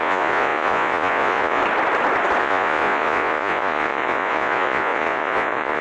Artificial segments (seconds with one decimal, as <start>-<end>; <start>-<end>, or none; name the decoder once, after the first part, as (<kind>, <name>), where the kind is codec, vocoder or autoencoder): 0.0-1.6 (vocoder, Vocos); 2.4-5.8